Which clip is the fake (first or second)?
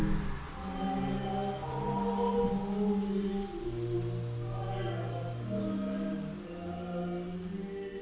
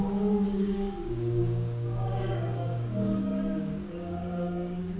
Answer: second